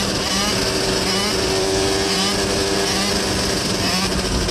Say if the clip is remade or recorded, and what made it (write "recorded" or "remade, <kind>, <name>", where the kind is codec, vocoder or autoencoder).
recorded